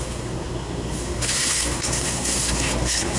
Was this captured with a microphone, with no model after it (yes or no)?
no